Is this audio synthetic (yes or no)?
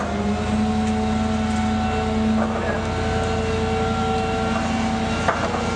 no